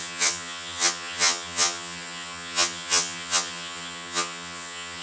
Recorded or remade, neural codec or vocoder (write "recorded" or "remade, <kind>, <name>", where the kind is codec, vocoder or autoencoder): remade, vocoder, HiFi-GAN